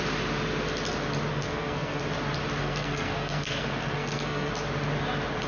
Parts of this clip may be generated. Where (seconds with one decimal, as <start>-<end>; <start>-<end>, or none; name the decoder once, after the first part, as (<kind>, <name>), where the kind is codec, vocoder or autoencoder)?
1.3-2.0 (codec, SNAC); 2.6-4.5